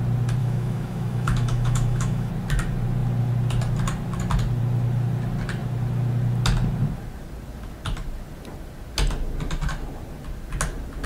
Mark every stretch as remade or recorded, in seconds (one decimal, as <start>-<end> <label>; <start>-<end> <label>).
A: 0.0-0.4 recorded; 0.4-2.3 remade; 2.3-11.1 recorded